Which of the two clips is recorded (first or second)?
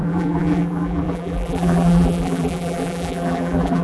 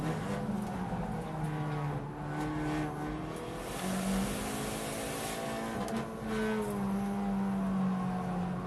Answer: second